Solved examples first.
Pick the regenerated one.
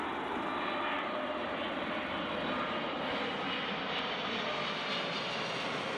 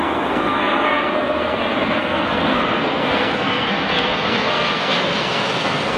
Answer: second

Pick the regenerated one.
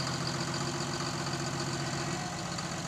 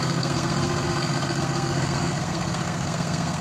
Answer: second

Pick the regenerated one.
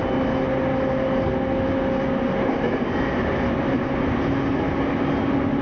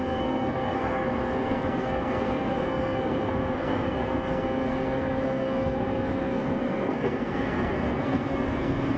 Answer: second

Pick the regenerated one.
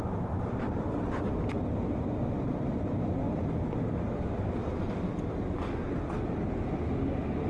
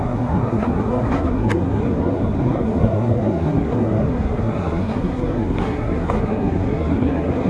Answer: second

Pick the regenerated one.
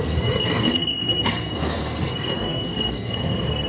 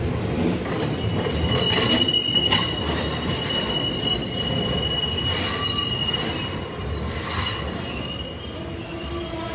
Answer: first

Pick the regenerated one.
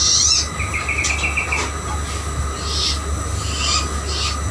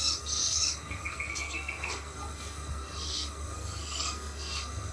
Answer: second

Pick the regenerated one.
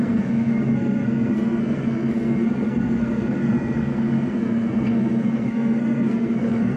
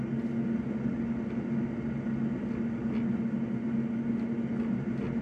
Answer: first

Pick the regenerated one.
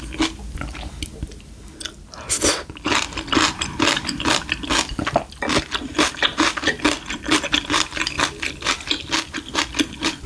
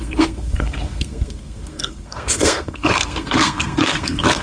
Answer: second